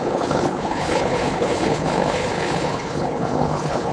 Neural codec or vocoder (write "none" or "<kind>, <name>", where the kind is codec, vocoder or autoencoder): codec, HILCodec